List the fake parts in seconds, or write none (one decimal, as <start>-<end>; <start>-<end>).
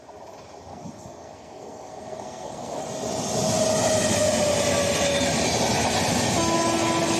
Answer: 0.7-2.8